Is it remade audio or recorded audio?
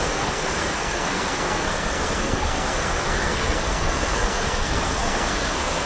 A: remade